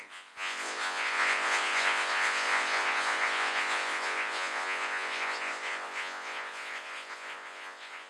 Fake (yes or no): yes